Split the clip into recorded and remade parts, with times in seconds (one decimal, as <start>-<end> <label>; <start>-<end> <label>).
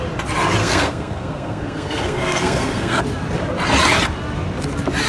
0.0-0.6 recorded; 0.6-3.0 remade; 3.0-5.1 recorded